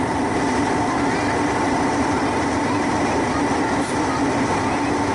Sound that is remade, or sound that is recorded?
remade